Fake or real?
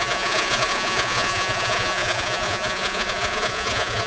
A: fake